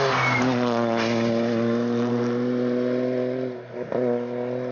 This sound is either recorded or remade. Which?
recorded